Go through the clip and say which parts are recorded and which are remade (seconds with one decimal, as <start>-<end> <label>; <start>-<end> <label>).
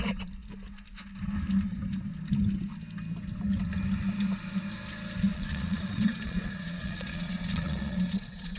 0.0-5.3 recorded; 5.3-8.6 remade